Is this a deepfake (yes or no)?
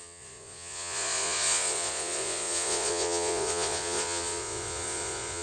yes